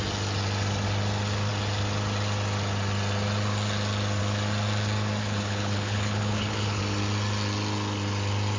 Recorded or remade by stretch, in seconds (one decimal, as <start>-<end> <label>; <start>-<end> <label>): 0.0-5.2 recorded; 5.2-6.8 remade; 6.8-8.6 recorded